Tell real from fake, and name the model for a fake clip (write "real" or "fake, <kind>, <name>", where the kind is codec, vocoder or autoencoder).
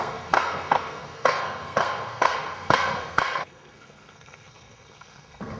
fake, codec, SNAC